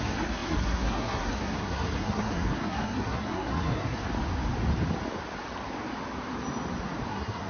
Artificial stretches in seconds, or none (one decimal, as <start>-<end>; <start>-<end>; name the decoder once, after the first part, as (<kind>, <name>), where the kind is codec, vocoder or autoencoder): 0.0-4.0 (codec, SNAC); 7.1-7.5